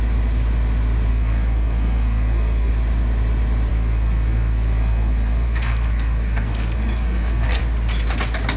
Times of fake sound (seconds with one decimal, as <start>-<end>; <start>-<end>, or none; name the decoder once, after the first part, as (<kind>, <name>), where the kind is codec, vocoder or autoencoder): 1.1-2.7 (codec, SNAC); 3.7-7.6